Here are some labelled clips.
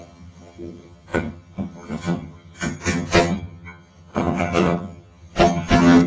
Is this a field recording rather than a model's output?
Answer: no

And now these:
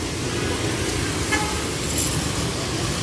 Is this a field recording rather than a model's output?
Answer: yes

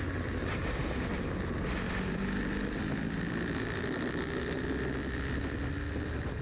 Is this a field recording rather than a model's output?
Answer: yes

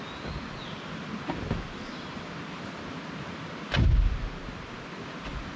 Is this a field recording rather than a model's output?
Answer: yes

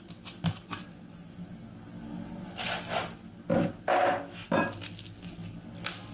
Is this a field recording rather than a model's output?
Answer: yes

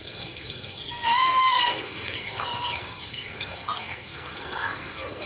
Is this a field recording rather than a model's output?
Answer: no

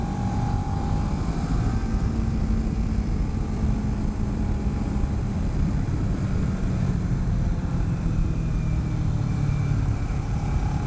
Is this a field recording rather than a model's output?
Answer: no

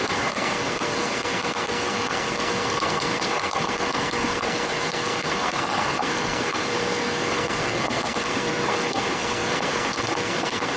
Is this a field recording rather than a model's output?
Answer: no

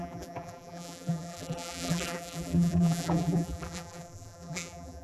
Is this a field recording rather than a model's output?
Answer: no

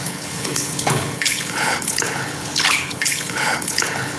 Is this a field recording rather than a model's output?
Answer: no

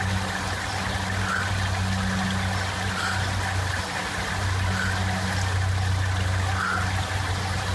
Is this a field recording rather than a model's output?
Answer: yes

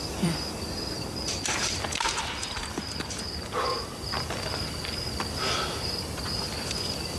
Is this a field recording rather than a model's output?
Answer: no